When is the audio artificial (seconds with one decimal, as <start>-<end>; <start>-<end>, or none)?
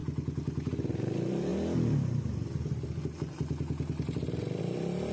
none